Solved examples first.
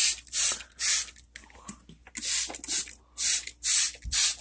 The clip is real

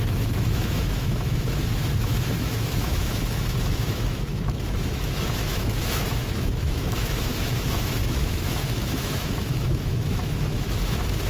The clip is fake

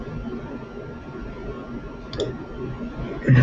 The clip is real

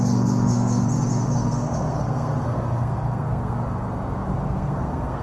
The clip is fake